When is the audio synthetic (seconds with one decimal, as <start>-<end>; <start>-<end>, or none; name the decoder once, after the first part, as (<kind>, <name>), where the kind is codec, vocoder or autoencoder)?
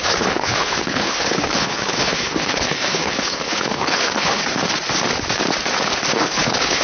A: 0.0-4.4 (codec, HILCodec); 6.1-6.8